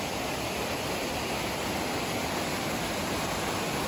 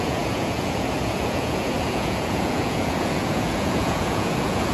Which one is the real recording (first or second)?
first